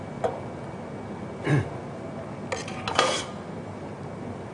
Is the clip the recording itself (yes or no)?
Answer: yes